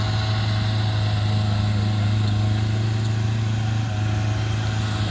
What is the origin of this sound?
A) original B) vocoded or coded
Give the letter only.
A